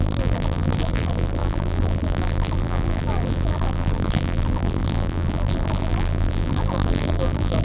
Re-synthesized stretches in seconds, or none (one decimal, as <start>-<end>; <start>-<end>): 0.0-7.6